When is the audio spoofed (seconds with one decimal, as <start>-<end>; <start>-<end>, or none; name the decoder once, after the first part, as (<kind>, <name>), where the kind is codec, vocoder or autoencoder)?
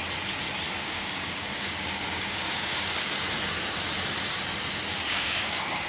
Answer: 0.8-3.2 (codec, DAC); 4.9-5.9